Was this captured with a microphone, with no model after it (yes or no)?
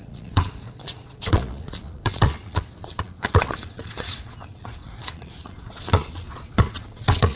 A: no